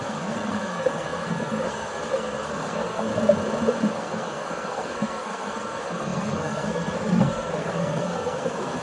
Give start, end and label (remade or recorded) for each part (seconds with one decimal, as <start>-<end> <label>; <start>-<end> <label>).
0.0-3.1 remade; 3.1-3.9 recorded; 3.9-8.8 remade